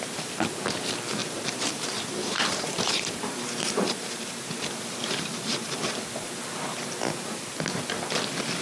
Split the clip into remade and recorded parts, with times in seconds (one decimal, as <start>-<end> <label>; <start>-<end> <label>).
0.0-1.2 recorded; 1.2-6.3 remade; 6.3-8.6 recorded

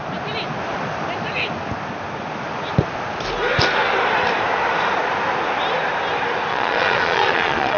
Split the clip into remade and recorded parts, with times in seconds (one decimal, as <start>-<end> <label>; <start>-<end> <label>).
0.0-6.5 recorded; 6.5-7.8 remade

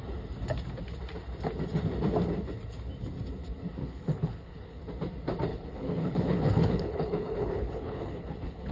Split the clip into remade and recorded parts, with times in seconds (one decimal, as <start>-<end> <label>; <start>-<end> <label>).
0.0-3.8 recorded; 3.8-4.8 remade; 4.8-5.5 recorded; 5.5-8.7 remade

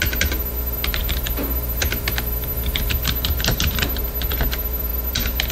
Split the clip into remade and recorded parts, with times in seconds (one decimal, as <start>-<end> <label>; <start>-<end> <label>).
0.0-5.5 remade

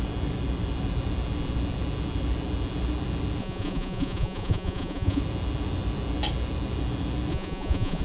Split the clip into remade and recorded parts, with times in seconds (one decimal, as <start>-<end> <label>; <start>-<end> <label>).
0.0-3.4 recorded; 3.4-5.2 remade; 5.2-7.3 recorded; 7.3-8.0 remade